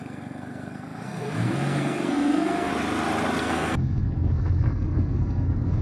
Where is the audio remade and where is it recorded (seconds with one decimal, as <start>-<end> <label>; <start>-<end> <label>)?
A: 0.0-2.7 remade; 2.7-3.4 recorded; 3.4-5.8 remade